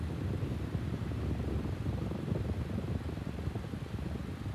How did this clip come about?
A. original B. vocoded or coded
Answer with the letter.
A